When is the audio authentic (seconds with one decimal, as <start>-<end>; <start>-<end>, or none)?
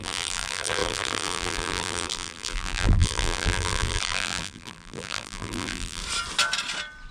6.0-7.1